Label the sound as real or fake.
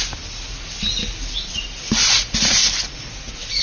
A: real